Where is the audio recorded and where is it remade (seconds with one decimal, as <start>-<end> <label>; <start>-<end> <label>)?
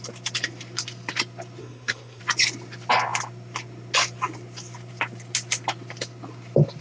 0.0-1.6 recorded; 1.6-2.2 remade; 2.2-6.8 recorded